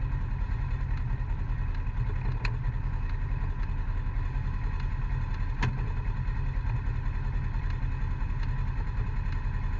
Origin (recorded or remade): recorded